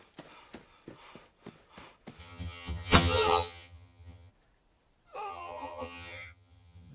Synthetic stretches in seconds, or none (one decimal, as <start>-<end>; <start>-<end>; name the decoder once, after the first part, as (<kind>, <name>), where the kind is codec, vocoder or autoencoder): 2.2-4.3 (vocoder, HiFi-GAN); 5.3-6.9